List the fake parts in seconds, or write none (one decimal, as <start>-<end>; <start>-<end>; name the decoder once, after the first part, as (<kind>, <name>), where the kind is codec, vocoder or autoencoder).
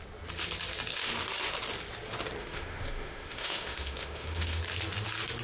2.4-4.6 (autoencoder, DAC-VAE)